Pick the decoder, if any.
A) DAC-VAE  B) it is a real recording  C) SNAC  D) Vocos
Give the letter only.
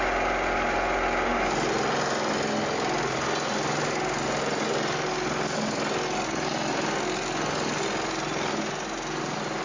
B